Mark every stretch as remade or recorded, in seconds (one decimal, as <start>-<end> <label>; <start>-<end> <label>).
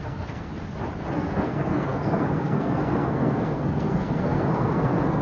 0.0-0.5 remade; 0.5-1.1 recorded; 1.1-5.2 remade